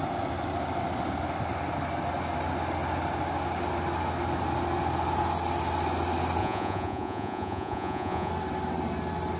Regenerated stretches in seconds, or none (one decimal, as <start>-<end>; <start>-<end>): 6.4-8.3